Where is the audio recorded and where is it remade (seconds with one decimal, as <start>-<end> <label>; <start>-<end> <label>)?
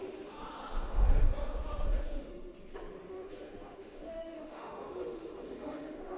0.0-2.3 remade; 2.3-3.1 recorded; 3.1-6.2 remade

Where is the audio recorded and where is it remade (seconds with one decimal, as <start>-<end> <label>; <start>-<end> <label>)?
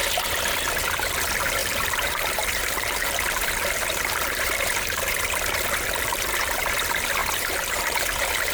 0.0-1.6 recorded; 1.6-6.6 remade; 6.6-7.2 recorded; 7.2-8.5 remade